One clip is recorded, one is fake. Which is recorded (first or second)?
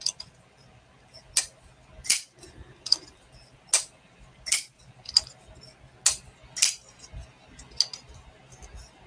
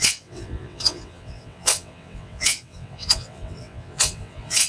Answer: first